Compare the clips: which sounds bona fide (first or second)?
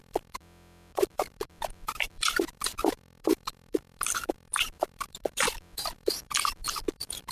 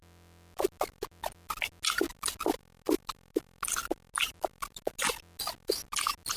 second